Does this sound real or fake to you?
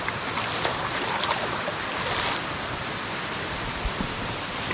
real